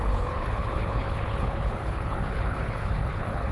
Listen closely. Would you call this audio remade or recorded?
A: remade